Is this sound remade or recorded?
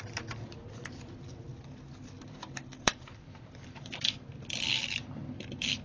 remade